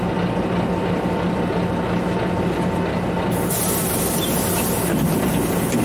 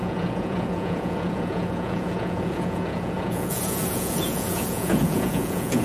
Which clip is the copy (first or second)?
second